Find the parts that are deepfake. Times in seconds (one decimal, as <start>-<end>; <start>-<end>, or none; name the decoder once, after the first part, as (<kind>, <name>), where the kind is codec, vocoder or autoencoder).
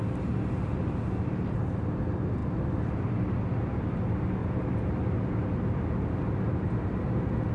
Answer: none